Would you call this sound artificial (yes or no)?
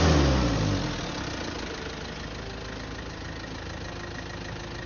no